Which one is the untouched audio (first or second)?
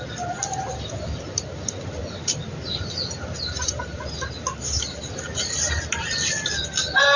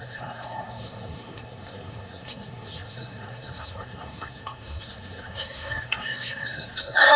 first